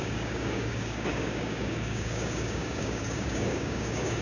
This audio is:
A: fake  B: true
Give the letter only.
A